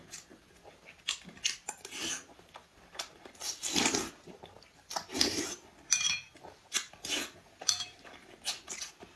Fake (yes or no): no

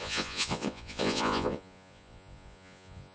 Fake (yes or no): yes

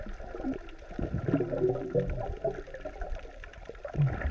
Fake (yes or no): no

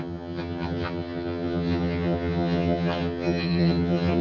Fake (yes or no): yes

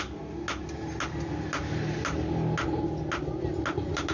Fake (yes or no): no